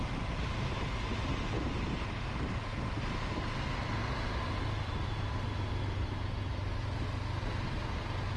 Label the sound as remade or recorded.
recorded